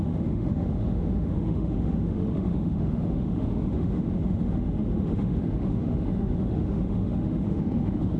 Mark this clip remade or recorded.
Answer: remade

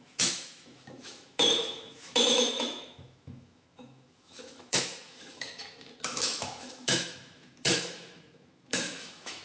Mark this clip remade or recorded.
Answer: remade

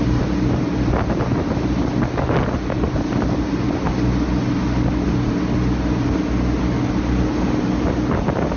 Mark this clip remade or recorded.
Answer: recorded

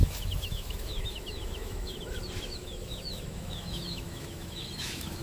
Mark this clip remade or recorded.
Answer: remade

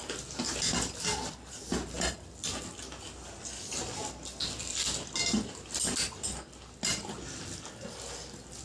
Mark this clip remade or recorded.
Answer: recorded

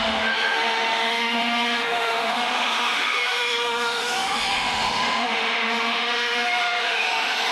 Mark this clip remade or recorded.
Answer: remade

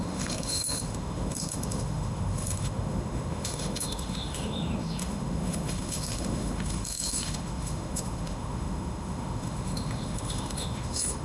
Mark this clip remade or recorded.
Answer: remade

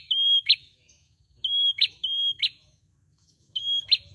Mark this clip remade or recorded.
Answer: remade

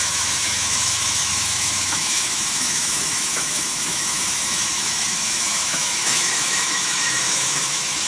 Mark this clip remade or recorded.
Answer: remade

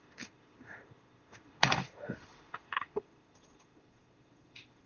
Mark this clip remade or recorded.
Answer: remade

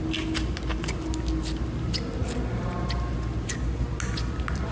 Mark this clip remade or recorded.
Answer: recorded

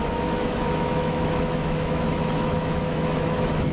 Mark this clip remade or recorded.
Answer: remade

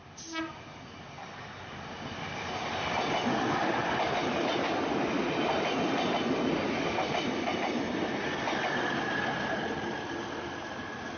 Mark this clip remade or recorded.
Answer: recorded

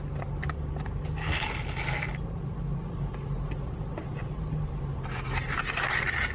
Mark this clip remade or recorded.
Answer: recorded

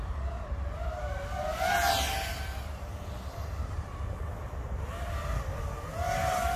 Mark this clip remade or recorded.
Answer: recorded